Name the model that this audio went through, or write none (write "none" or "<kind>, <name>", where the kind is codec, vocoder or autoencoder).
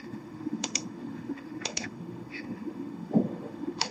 autoencoder, DAC-VAE